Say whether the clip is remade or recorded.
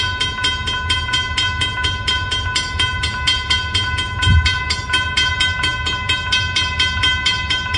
recorded